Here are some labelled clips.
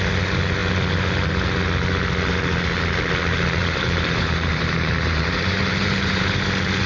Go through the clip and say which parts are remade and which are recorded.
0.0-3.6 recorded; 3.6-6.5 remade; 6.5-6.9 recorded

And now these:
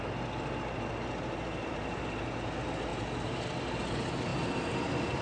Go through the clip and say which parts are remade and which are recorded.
0.0-1.5 recorded; 1.5-2.2 remade; 2.2-2.9 recorded; 2.9-3.6 remade; 3.6-5.2 recorded

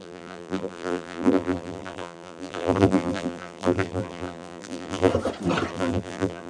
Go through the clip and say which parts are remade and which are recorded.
0.0-5.1 remade; 5.1-5.7 recorded; 5.7-6.5 remade